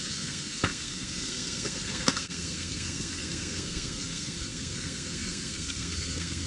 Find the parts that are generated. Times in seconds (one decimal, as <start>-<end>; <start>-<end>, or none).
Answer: 0.0-6.5